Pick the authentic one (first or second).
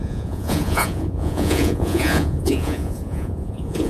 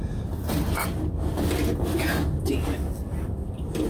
second